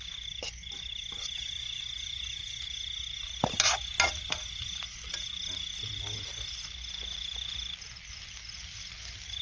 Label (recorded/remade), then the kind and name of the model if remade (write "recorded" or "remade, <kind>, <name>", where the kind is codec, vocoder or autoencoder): recorded